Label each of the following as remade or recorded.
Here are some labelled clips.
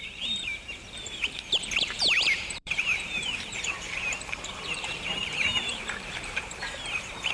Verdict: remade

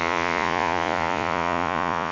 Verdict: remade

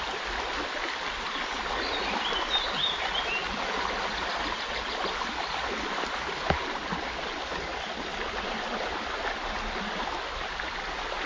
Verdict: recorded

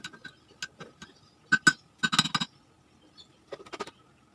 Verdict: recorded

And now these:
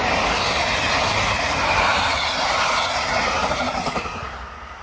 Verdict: recorded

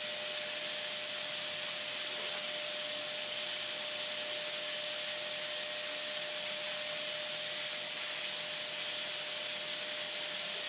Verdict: recorded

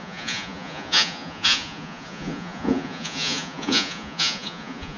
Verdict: remade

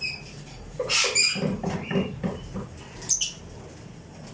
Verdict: recorded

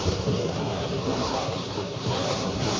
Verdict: remade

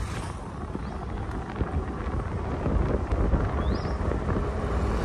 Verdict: recorded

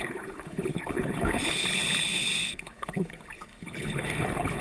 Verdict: remade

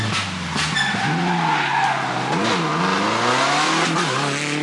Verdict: recorded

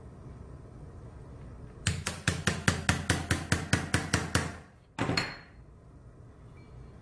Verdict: recorded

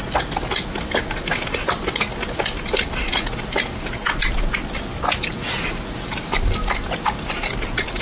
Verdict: recorded